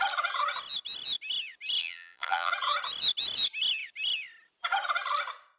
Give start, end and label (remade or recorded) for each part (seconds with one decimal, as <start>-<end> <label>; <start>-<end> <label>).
0.0-1.8 recorded; 1.8-2.5 remade; 2.5-5.6 recorded